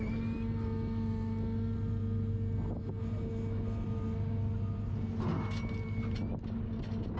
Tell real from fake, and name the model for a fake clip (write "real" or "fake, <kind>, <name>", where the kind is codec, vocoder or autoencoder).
real